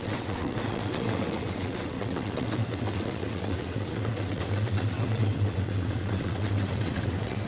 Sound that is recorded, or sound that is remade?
remade